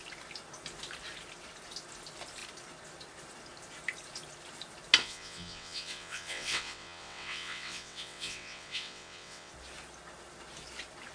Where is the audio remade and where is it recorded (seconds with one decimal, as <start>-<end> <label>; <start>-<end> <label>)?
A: 0.0-5.0 recorded; 5.0-9.5 remade; 9.5-11.1 recorded